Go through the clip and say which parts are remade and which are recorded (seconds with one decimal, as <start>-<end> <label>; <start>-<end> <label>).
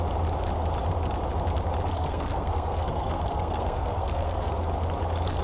0.0-1.9 recorded; 1.9-4.5 remade; 4.5-5.4 recorded